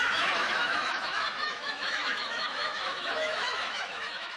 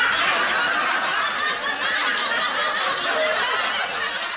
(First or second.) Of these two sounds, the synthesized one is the first